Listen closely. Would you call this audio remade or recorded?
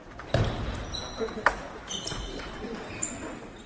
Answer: recorded